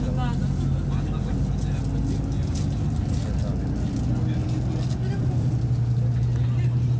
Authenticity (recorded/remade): recorded